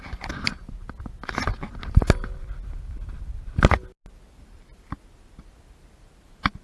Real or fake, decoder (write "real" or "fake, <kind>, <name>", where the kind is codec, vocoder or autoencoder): real